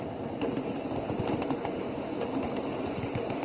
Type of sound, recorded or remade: recorded